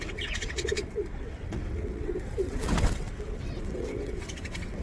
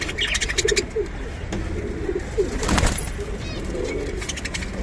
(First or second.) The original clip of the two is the second